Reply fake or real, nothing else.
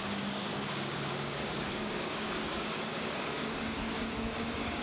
fake